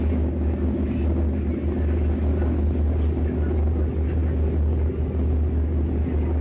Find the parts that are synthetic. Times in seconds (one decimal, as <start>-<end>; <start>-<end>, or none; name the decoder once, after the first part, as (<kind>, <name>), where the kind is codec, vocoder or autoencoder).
none

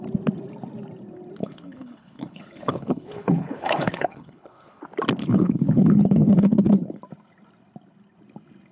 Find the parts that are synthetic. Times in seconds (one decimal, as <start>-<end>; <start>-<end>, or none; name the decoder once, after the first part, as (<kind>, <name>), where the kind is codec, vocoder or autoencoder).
1.4-4.8 (codec, HILCodec); 5.2-7.0

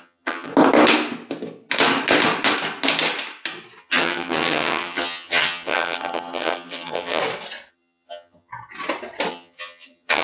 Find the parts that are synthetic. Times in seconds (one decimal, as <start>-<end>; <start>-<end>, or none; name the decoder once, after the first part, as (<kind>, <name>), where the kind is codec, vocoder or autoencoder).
0.0-0.5 (vocoder, HiFi-GAN); 3.8-7.2; 7.7-8.5; 9.3-10.2

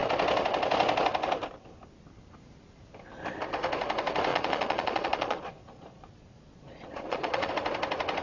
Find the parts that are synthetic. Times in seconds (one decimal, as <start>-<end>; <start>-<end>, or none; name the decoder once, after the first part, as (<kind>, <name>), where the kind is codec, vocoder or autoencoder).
4.3-7.5 (vocoder, Vocos)

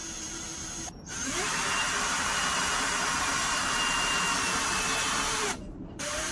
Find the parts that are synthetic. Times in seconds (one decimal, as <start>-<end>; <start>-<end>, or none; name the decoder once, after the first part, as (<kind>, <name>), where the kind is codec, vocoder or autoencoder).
0.0-6.3 (vocoder, BigVGAN v2)